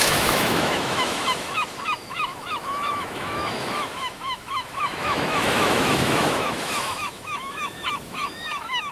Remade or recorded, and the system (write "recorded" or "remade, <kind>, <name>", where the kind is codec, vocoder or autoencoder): remade, autoencoder, DAC-VAE